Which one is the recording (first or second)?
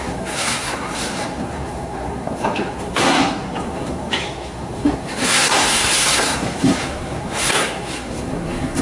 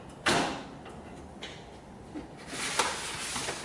second